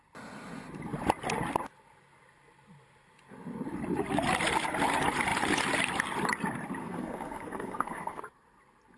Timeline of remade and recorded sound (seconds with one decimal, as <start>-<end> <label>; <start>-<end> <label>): 0.0-6.8 recorded; 6.8-8.2 remade; 8.2-9.0 recorded